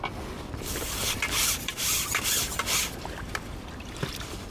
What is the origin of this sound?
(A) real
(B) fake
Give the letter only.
A